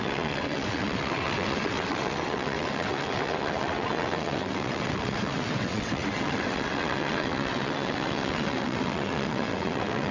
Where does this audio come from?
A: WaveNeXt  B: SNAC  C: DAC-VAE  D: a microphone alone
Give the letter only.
A